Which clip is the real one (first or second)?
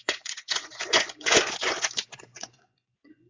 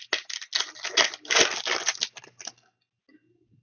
second